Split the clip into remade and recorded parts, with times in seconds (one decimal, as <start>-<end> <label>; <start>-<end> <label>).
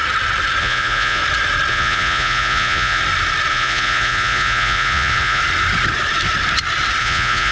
0.0-0.6 recorded; 0.6-1.2 remade; 1.2-1.7 recorded; 1.7-3.0 remade; 3.0-3.5 recorded; 3.5-5.4 remade; 5.4-7.0 recorded; 7.0-7.5 remade